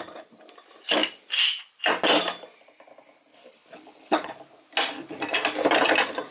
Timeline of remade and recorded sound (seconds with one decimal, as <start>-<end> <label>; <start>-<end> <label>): 0.0-3.3 recorded; 3.3-4.3 remade; 4.3-6.3 recorded